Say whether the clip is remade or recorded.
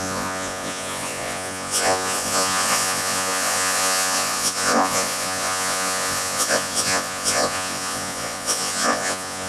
remade